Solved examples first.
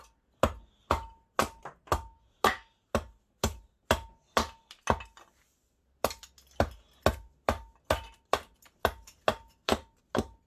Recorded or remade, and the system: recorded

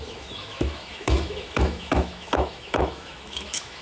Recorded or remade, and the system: remade, autoencoder, DAC-VAE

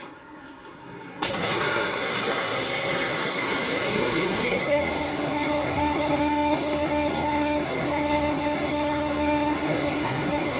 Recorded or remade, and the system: remade, codec, SNAC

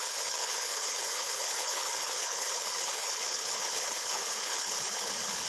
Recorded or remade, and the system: remade, codec, HILCodec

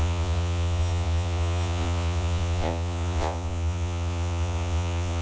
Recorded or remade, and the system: remade, vocoder, Vocos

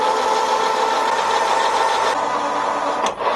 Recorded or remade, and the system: recorded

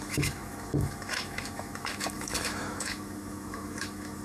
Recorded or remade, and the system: remade, autoencoder, DAC-VAE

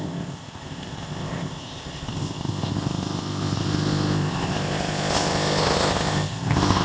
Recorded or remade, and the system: remade, codec, ZipCodec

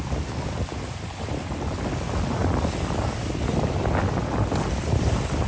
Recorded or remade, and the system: recorded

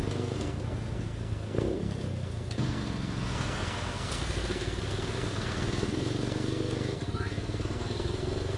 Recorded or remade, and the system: remade, codec, SNAC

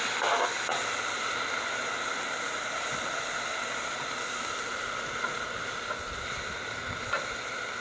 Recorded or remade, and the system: recorded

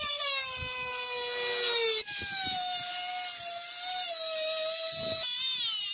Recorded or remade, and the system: recorded